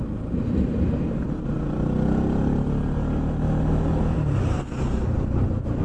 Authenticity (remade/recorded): recorded